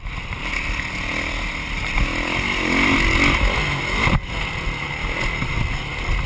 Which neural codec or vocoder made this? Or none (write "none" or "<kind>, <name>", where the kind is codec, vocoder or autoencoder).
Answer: none